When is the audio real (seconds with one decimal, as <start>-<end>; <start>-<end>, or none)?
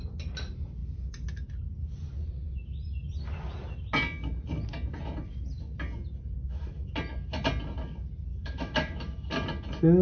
0.0-6.4; 6.9-8.3; 9.3-10.0